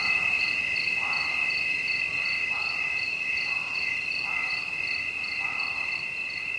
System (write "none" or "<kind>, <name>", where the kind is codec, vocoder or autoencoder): none